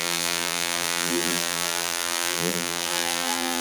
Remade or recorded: remade